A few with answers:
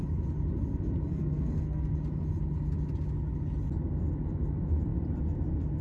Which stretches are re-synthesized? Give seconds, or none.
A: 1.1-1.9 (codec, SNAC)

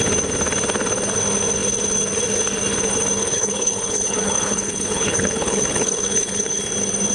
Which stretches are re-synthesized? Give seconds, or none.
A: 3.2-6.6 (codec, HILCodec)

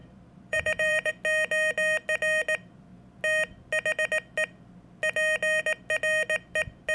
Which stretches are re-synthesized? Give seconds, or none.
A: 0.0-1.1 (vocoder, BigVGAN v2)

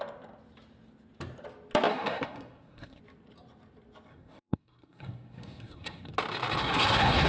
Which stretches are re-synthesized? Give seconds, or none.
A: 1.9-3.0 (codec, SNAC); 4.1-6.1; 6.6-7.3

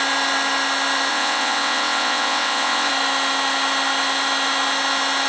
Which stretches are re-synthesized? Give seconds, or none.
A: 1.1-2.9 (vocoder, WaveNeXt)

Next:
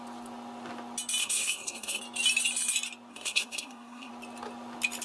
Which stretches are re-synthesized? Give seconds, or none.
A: 1.2-2.0 (codec, SNAC); 3.1-4.1

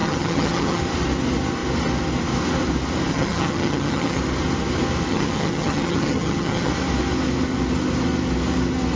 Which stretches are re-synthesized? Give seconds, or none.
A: 0.0-0.8 (vocoder, HiFi-GAN); 3.1-4.2; 5.1-6.7

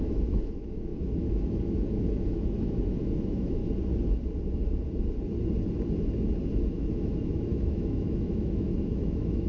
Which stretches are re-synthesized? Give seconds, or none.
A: 0.0-3.6 (autoencoder, DAC-VAE); 6.7-9.5